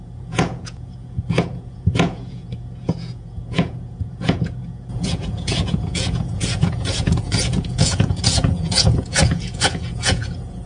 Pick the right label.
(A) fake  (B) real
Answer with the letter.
A